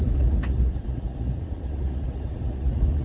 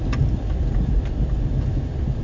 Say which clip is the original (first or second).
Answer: second